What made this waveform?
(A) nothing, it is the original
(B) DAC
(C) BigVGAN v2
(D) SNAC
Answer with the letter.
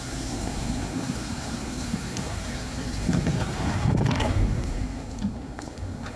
D